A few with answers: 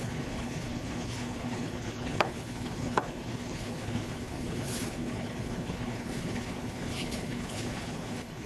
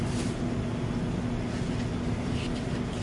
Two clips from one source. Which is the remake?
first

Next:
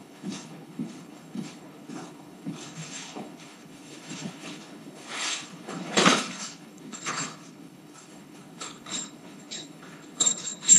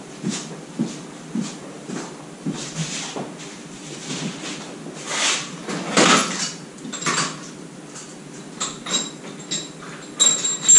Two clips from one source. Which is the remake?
first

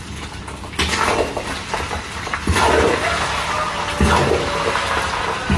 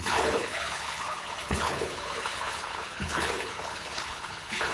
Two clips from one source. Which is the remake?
second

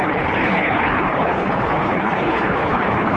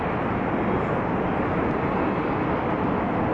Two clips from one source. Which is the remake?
first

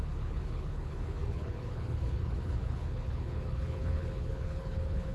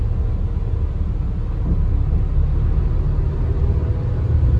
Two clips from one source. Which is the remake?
first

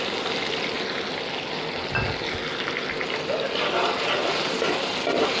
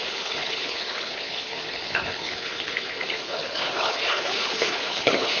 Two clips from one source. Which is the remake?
second